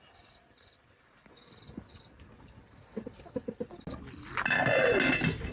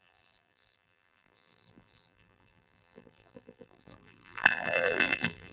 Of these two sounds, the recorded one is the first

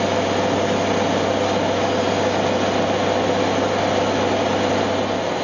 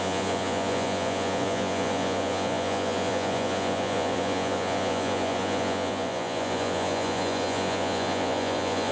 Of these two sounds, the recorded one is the first